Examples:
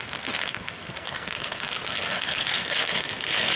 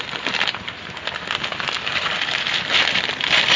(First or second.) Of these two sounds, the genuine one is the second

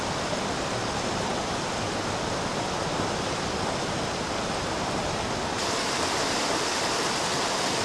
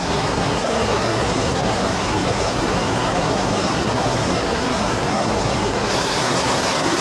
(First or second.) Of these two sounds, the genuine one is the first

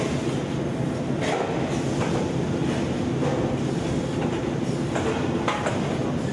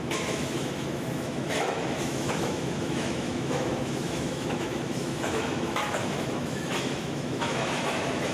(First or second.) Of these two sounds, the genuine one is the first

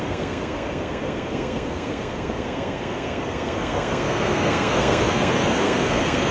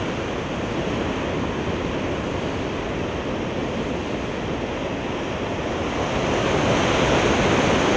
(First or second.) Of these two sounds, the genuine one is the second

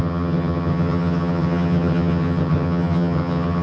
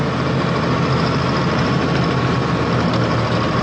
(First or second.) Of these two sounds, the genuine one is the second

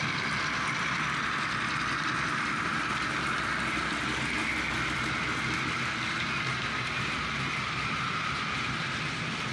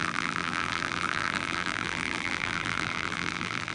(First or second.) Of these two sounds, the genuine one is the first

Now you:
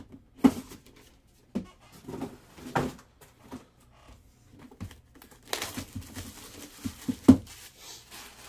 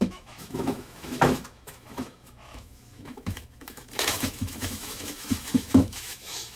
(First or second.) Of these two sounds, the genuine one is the first